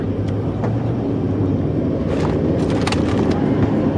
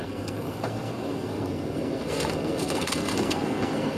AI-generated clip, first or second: second